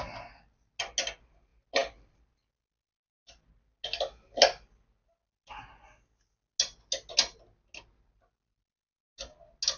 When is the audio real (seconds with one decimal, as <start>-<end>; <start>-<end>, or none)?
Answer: 0.0-9.8